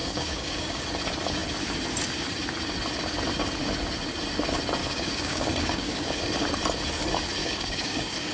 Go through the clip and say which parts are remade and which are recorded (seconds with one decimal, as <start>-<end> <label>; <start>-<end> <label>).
0.0-0.8 remade; 0.8-4.8 recorded; 4.8-6.2 remade; 6.2-7.4 recorded; 7.4-8.3 remade